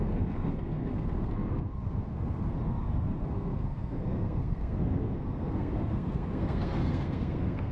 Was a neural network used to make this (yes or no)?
yes